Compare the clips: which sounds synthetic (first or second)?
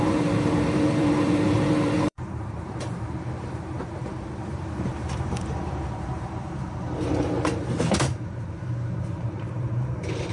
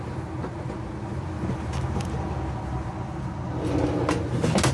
first